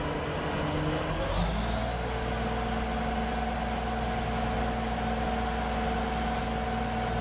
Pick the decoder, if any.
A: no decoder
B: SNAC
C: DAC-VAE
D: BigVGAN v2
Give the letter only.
A